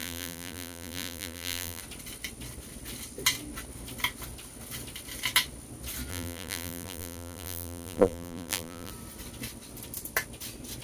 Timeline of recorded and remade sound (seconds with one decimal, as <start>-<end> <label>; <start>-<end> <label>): 0.0-1.8 remade; 1.8-6.1 recorded; 6.1-8.9 remade; 8.9-10.8 recorded